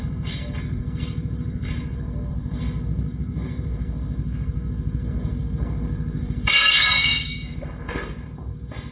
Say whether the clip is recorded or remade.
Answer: remade